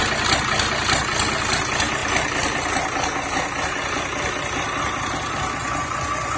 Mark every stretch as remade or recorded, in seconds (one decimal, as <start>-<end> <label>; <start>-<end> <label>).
0.0-5.6 recorded; 5.6-6.4 remade

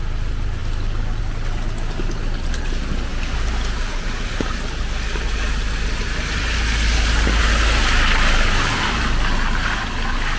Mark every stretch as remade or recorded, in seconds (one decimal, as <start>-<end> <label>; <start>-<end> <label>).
0.0-10.4 recorded

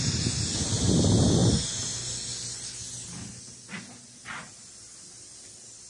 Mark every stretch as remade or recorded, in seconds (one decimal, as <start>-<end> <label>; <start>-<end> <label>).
0.0-5.9 recorded

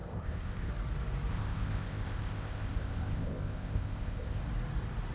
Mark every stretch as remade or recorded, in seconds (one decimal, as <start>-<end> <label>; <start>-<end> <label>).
0.0-0.7 remade; 0.7-1.3 recorded; 1.3-4.4 remade; 4.4-5.1 recorded

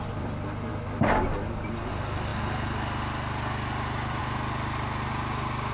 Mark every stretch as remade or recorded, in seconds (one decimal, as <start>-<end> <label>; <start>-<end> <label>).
0.0-5.7 recorded